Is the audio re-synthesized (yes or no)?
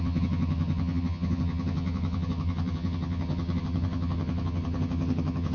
yes